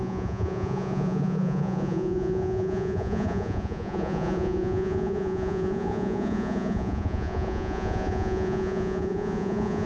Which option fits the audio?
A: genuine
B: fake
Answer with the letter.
B